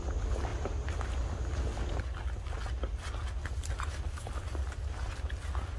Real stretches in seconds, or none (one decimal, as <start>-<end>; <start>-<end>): 0.0-5.8